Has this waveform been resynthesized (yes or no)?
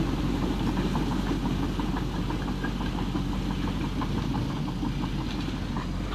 no